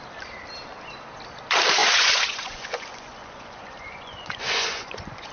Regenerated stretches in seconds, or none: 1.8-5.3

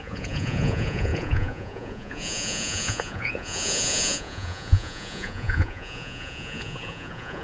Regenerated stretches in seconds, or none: 0.0-7.4

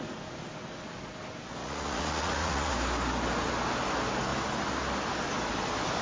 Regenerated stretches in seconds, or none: 1.6-2.7

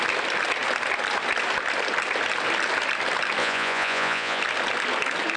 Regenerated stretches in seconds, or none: 3.4-4.4

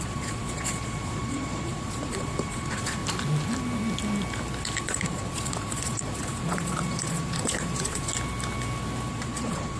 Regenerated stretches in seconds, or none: 0.0-3.0; 4.8-8.1; 9.1-9.8